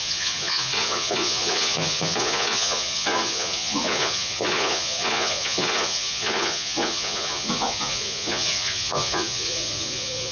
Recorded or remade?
remade